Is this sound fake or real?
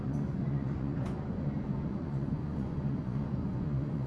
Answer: fake